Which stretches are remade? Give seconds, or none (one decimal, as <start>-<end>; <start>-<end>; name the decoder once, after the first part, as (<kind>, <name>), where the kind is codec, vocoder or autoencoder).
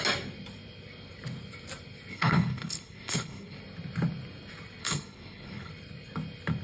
2.1-3.6 (codec, HILCodec); 4.8-5.7